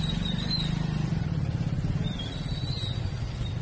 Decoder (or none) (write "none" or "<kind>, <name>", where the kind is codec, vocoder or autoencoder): none